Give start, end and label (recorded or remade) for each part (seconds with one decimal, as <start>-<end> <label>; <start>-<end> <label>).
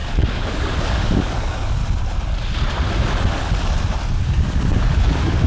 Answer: 0.0-1.8 remade; 1.8-4.2 recorded; 4.2-5.5 remade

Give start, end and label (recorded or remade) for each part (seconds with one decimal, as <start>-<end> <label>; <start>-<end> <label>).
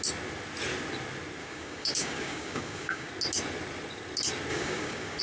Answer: 0.0-1.4 recorded; 1.4-3.1 remade; 3.1-4.5 recorded; 4.5-5.2 remade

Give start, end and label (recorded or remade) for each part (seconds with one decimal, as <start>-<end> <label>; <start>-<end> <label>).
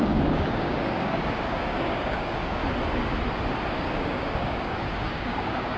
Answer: 0.0-2.6 remade; 2.6-3.7 recorded; 3.7-5.8 remade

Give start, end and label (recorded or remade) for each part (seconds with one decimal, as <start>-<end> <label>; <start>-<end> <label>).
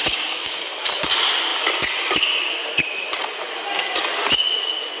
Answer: 0.0-0.6 remade; 0.6-5.0 recorded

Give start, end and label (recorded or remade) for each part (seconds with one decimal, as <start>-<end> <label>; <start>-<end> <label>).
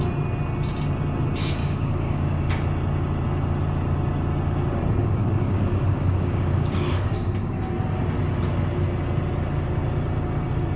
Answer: 0.0-1.6 recorded; 1.6-2.5 remade; 2.5-5.0 recorded; 5.0-7.7 remade; 7.7-10.8 recorded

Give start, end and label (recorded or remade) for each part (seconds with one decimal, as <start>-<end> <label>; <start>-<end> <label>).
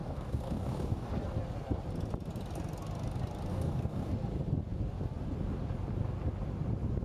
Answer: 0.0-1.1 remade; 1.1-3.5 recorded; 3.5-4.1 remade; 4.1-7.0 recorded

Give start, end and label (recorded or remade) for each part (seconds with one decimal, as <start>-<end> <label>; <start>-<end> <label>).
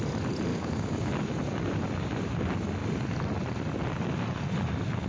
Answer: 0.0-0.5 recorded; 0.5-1.1 remade; 1.1-5.1 recorded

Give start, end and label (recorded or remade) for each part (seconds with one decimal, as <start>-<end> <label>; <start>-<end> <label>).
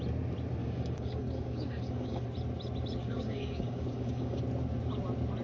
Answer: 0.0-0.6 recorded; 0.6-2.2 remade; 2.2-3.0 recorded; 3.0-4.4 remade; 4.4-5.4 recorded